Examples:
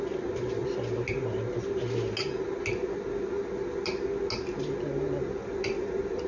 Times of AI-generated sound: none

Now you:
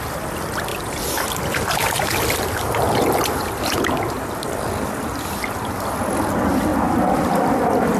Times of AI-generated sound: none

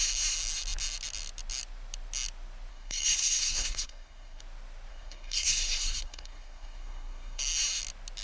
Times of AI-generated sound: 2.7-4.4 (codec, SNAC); 4.9-7.4

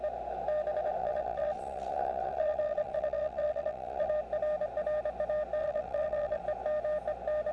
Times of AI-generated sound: 1.0-4.1 (vocoder, WaveNeXt); 5.6-6.4